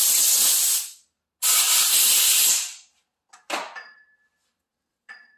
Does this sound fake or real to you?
real